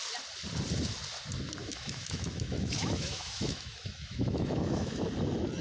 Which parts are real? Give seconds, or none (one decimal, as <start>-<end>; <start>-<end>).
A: 0.0-1.6; 5.0-5.6